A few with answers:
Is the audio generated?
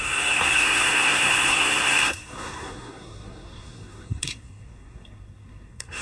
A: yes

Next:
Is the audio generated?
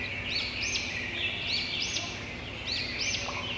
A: no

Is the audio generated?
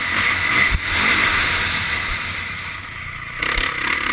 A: no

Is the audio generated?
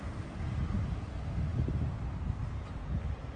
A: no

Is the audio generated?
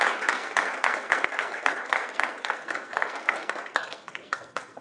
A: yes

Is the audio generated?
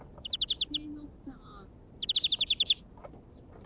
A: no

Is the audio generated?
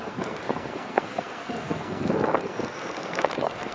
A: yes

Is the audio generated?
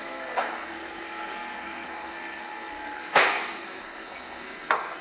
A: yes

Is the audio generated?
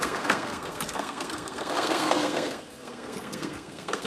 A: yes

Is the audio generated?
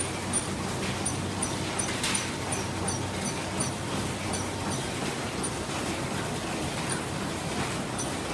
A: no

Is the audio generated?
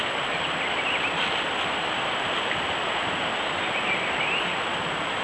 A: no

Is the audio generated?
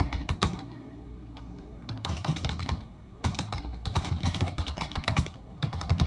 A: yes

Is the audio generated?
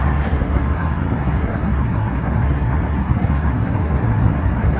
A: yes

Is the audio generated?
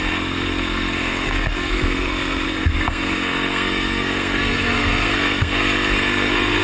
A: yes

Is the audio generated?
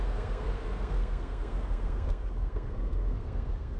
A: yes